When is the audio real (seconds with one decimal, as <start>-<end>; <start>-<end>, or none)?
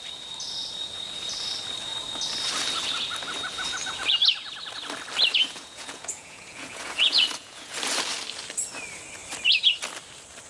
0.0-5.4; 7.7-10.5